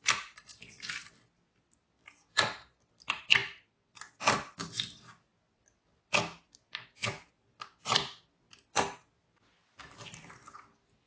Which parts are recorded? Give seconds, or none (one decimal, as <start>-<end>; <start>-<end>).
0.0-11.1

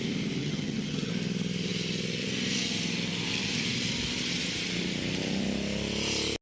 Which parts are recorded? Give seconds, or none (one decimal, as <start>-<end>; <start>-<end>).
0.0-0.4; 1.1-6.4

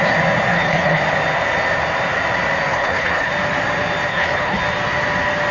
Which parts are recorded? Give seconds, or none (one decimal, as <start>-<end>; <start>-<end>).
0.0-0.5; 1.0-2.7; 3.3-4.1; 4.6-5.5

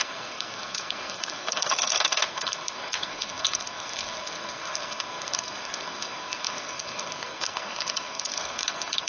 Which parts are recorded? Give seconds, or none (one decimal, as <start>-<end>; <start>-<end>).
none